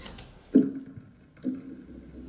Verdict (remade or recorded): recorded